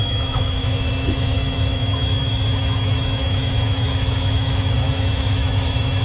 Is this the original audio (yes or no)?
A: no